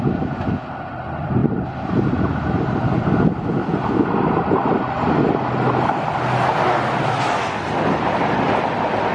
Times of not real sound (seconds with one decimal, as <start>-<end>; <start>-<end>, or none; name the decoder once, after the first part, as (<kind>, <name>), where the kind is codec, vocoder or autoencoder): none